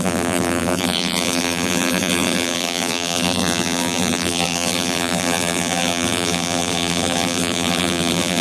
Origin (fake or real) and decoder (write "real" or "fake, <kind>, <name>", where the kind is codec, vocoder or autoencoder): fake, vocoder, BigVGAN v2